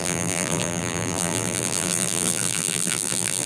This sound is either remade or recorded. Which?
remade